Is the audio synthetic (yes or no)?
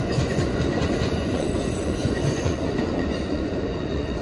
yes